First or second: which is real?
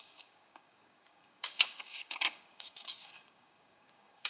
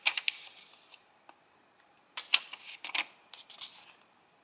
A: second